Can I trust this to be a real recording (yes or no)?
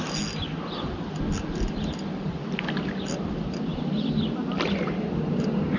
yes